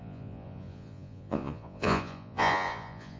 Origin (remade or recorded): remade